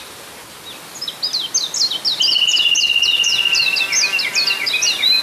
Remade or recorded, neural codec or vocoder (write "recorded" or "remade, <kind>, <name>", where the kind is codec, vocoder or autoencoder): recorded